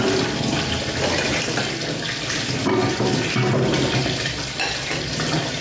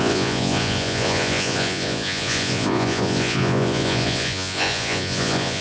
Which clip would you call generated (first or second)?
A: second